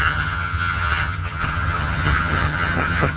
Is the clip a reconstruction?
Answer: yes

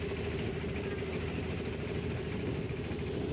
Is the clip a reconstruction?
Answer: no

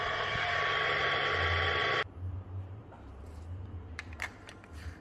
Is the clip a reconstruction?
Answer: yes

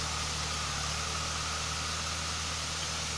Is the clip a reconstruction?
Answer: no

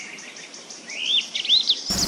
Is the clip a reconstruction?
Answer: no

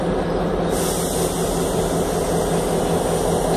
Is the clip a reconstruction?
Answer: no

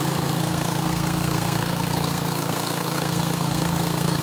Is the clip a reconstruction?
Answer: yes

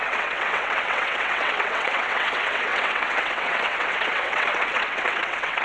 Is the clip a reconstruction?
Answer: yes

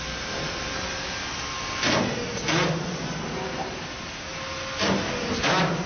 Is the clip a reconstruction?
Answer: no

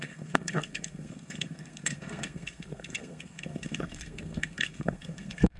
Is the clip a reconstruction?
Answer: yes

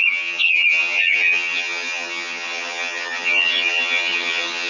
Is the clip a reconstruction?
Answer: yes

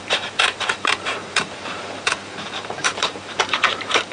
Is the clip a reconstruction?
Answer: yes